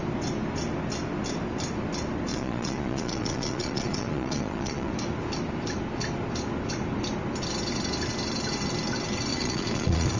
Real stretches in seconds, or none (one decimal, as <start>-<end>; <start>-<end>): 0.0-2.3; 4.9-9.3